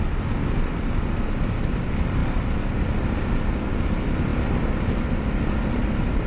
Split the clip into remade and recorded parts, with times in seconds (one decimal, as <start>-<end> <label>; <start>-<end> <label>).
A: 0.0-6.3 recorded